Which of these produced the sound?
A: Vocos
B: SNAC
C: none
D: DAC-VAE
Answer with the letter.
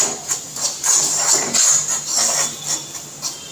C